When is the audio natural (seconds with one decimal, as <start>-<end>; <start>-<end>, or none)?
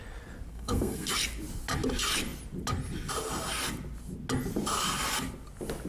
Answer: 0.0-0.5; 1.1-5.9